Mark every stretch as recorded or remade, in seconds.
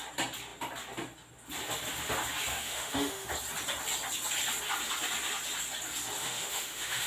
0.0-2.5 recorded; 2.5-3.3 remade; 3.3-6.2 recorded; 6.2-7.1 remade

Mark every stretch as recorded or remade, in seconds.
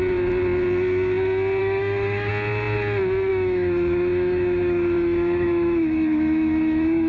0.0-1.6 recorded; 1.6-2.3 remade; 2.3-3.3 recorded; 3.3-7.1 remade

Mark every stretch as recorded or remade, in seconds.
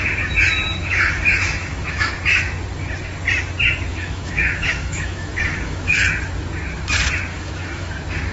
0.0-0.8 recorded; 0.8-2.1 remade; 2.1-3.9 recorded; 3.9-6.0 remade; 6.0-7.3 recorded; 7.3-7.9 remade; 7.9-8.3 recorded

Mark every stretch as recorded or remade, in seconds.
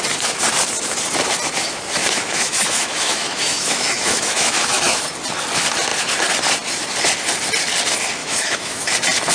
0.0-2.0 recorded; 2.0-5.0 remade; 5.0-8.2 recorded; 8.2-8.9 remade; 8.9-9.3 recorded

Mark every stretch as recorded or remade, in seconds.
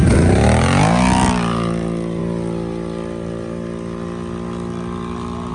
0.0-5.5 recorded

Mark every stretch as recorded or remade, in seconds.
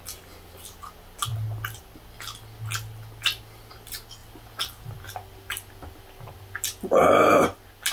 0.0-7.9 recorded